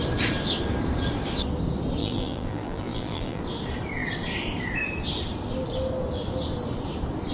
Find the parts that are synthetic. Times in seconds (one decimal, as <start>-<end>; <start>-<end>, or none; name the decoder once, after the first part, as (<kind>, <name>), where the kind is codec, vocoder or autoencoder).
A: 2.0-3.4 (vocoder, BigVGAN v2)